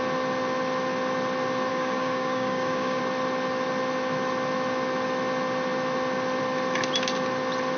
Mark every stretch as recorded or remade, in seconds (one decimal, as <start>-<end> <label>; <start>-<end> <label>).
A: 0.0-1.7 recorded; 1.7-3.0 remade; 3.0-7.8 recorded